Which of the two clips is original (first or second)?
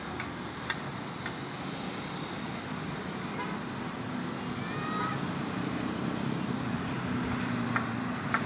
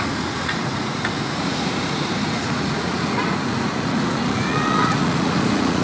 first